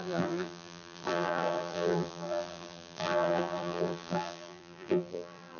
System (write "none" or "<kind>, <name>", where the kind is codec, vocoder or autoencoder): vocoder, BigVGAN v2